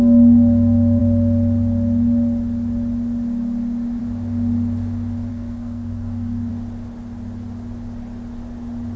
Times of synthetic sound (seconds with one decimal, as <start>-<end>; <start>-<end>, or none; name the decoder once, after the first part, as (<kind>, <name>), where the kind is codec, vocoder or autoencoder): 5.3-6.5 (codec, SNAC)